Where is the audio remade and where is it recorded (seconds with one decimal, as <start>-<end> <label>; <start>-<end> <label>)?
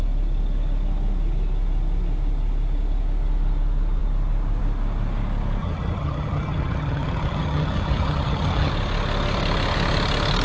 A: 0.0-5.6 recorded; 5.6-8.7 remade; 8.7-10.4 recorded